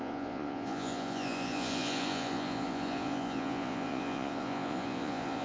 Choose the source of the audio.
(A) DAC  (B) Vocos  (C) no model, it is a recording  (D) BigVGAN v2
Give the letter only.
B